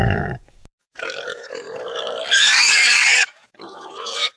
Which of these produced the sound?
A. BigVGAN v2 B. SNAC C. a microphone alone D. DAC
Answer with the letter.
D